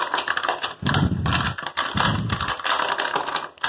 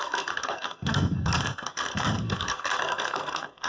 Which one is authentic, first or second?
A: first